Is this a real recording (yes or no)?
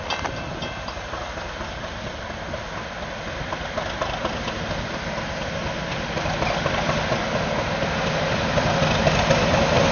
yes